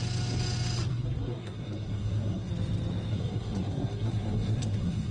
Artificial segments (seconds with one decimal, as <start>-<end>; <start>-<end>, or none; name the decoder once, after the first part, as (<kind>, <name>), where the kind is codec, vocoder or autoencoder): 0.9-2.5 (codec, SNAC); 3.1-5.1